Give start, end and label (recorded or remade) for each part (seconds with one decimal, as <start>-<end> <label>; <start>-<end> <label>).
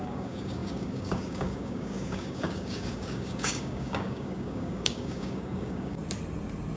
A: 0.0-6.0 remade; 6.0-6.8 recorded